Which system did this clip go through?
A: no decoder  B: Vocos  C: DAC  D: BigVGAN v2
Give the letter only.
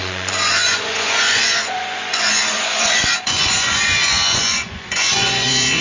B